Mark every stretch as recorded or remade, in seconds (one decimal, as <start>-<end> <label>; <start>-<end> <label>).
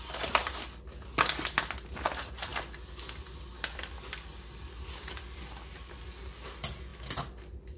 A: 0.0-7.8 recorded